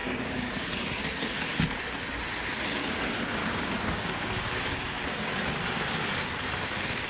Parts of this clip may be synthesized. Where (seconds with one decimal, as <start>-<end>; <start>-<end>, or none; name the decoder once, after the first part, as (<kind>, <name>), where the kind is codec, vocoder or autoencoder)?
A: 0.0-0.7 (codec, DAC); 3.4-4.8